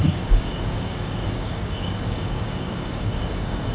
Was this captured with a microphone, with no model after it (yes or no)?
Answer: no